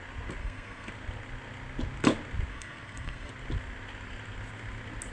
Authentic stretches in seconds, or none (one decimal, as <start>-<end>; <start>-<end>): 0.0-0.4; 0.9-2.5; 3.3-5.1